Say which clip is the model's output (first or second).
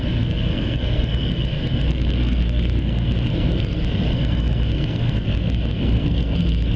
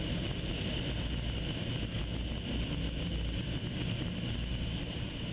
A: first